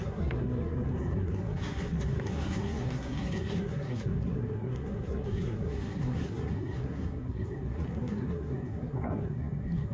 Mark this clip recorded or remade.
remade